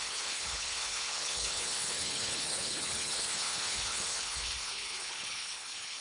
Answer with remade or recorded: remade